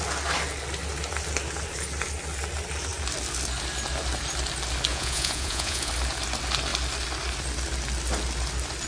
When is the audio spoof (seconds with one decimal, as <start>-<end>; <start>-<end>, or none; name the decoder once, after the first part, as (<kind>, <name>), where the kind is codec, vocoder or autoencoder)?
4.9-5.9 (vocoder, Vocos)